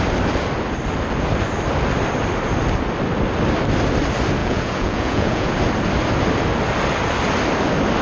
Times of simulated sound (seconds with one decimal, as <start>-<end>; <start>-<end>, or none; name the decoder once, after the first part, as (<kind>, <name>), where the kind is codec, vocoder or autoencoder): 4.4-5.5 (vocoder, Vocos)